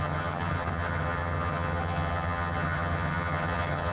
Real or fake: fake